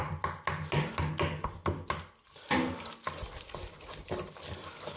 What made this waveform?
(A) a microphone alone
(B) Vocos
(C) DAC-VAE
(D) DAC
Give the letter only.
A